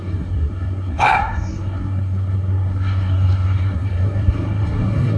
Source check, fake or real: fake